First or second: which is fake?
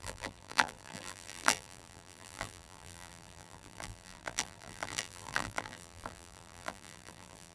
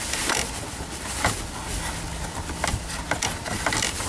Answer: first